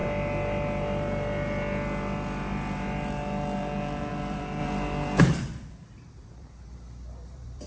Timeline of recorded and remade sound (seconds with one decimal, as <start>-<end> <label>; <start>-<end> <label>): 0.0-4.1 recorded; 4.1-4.6 remade; 4.6-5.2 recorded; 5.2-7.7 remade

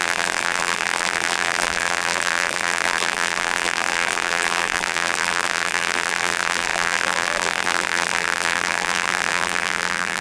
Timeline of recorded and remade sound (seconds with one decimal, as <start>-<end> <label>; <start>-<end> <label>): 0.0-10.2 remade

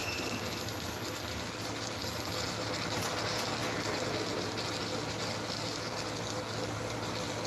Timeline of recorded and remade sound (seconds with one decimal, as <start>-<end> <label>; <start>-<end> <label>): 0.0-7.5 recorded

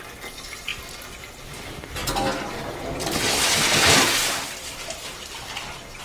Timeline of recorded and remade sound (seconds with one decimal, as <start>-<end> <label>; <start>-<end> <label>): 0.0-4.2 recorded; 4.2-6.0 remade

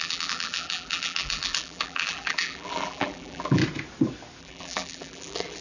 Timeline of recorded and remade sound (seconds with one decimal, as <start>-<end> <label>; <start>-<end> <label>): 0.0-3.6 remade; 3.6-4.4 recorded; 4.4-5.6 remade

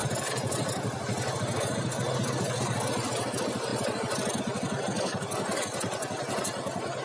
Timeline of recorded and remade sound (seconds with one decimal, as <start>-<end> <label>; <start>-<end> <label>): 0.0-1.0 remade; 1.0-3.7 recorded; 3.7-4.4 remade; 4.4-7.0 recorded